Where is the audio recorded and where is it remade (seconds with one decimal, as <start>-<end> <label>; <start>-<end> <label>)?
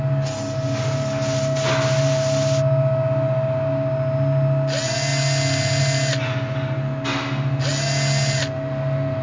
0.0-9.2 recorded